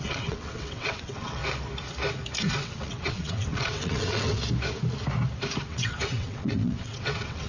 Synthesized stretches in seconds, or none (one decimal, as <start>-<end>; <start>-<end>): 0.0-1.4; 2.5-4.4; 5.6-7.5